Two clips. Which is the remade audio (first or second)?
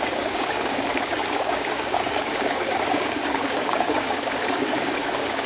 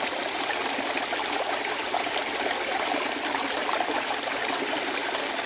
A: first